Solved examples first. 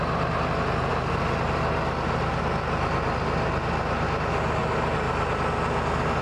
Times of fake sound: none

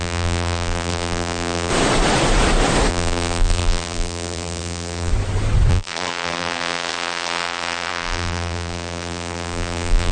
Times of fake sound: 0.0-1.7 (vocoder, BigVGAN v2); 2.9-5.1; 5.7-10.1